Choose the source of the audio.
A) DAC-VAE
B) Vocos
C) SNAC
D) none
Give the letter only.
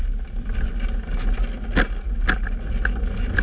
D